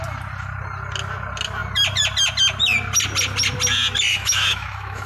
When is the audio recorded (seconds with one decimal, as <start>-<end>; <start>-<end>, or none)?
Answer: 0.0-4.1